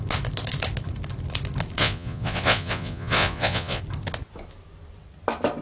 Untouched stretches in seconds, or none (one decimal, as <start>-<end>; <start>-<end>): 0.0-1.8; 3.8-5.6